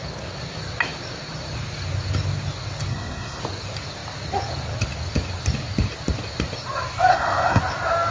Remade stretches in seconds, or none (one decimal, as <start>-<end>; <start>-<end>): 2.9-3.4; 7.1-7.6